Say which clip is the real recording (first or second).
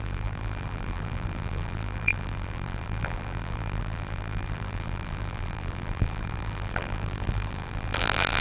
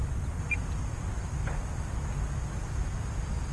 second